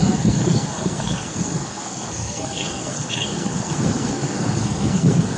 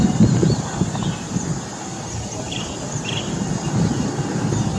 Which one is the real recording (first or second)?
second